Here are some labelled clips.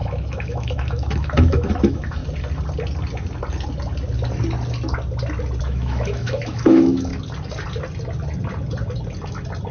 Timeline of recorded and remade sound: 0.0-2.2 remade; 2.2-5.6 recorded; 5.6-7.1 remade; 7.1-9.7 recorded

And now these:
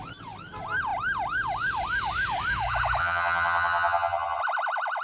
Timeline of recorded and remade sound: 0.0-3.0 recorded; 3.0-4.4 remade; 4.4-5.0 recorded

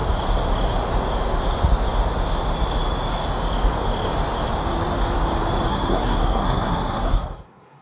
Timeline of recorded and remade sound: 0.0-5.7 recorded; 5.7-7.8 remade

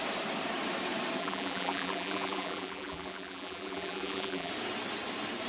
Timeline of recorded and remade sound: 0.0-1.2 recorded; 1.2-4.5 remade; 4.5-5.5 recorded

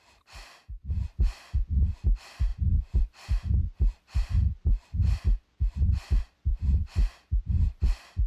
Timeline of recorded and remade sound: 0.0-8.3 recorded

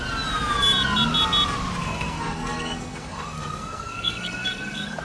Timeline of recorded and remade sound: 0.0-1.8 recorded; 1.8-5.0 remade

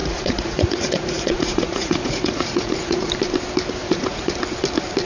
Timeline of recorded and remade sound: 0.0-3.1 remade; 3.1-3.8 recorded; 3.8-4.3 remade; 4.3-5.1 recorded